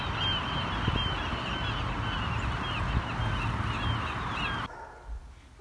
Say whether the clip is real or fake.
real